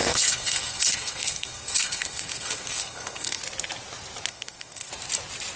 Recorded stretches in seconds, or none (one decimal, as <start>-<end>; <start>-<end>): 3.4-4.3; 4.9-5.6